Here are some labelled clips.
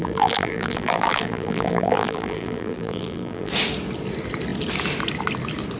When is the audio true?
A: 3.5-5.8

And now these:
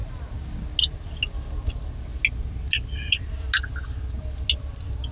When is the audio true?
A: 0.0-5.1

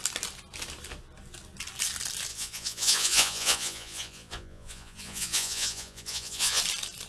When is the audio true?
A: 0.0-2.3; 6.6-7.1

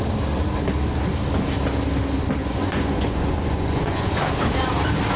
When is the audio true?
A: 0.0-2.4; 4.1-5.2

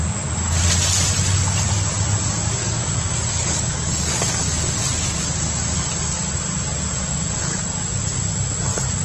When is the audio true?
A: 0.0-2.6; 4.1-9.0